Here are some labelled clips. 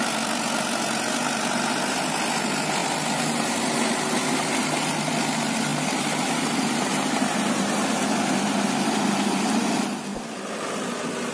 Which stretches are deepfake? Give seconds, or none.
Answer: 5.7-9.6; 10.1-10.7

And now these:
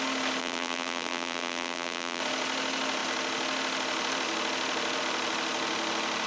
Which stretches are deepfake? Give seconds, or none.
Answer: 0.4-2.2

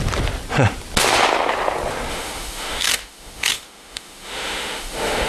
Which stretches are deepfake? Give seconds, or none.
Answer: 2.1-5.3

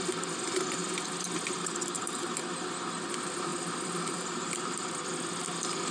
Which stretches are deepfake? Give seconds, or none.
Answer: none

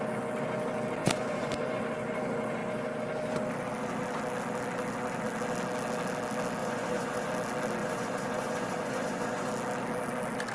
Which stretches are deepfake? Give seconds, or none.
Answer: 1.0-1.8; 6.6-7.3; 7.8-9.5

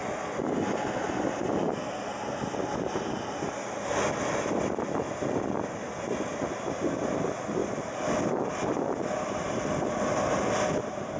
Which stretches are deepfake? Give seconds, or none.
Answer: none

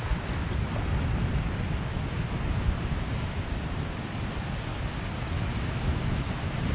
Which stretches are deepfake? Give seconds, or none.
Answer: none